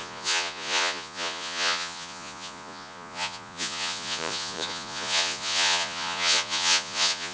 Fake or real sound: fake